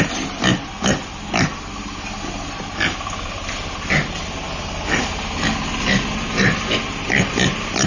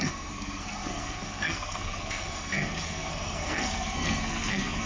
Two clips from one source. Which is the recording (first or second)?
first